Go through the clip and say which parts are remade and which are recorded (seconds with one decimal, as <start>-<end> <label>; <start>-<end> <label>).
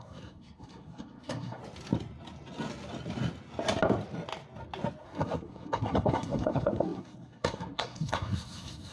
0.0-1.6 remade; 1.6-5.0 recorded; 5.0-8.9 remade